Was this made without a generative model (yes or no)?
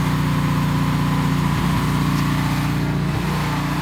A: yes